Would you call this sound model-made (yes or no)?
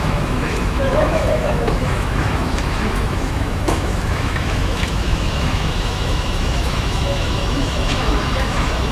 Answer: yes